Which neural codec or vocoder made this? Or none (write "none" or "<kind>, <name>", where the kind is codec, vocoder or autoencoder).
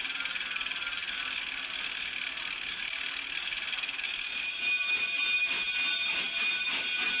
none